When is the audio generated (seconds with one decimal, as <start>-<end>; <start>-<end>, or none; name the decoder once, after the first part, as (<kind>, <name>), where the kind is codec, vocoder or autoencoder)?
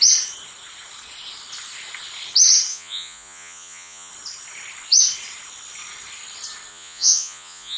2.7-4.1 (vocoder, Vocos); 6.7-7.8